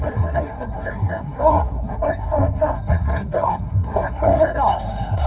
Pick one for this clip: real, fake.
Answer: fake